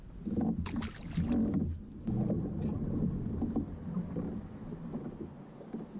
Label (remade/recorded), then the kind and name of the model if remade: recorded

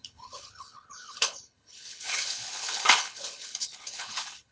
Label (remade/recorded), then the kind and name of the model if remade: remade, codec, HILCodec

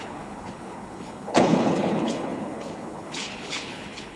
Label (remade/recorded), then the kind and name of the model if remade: remade, codec, HILCodec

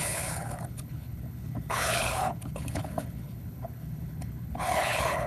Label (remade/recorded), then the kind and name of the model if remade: remade, codec, HILCodec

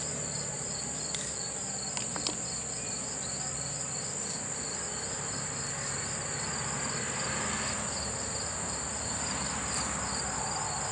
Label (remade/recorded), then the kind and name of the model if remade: recorded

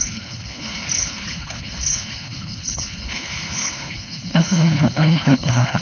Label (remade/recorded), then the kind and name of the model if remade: remade, codec, HILCodec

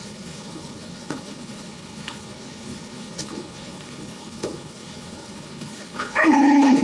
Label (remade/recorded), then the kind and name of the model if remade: remade, codec, HILCodec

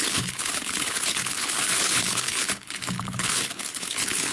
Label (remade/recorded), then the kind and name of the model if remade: remade, codec, HILCodec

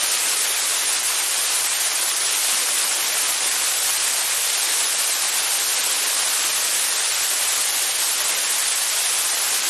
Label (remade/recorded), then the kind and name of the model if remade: recorded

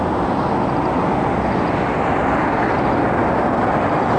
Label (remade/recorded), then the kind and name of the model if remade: recorded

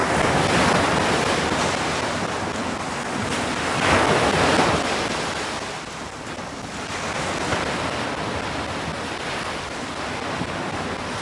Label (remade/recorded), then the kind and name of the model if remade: recorded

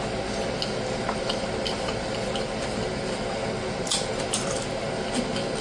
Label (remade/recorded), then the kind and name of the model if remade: recorded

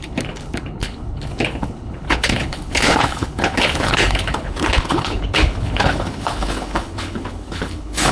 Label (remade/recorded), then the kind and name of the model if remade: remade, codec, HILCodec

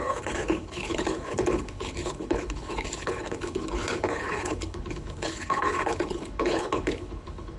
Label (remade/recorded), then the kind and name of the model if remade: remade, codec, HILCodec